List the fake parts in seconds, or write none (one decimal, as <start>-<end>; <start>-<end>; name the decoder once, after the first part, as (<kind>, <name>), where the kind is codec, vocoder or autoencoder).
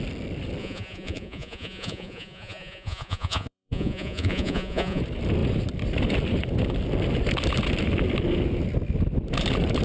0.6-5.0 (vocoder, Vocos)